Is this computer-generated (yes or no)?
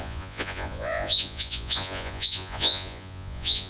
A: yes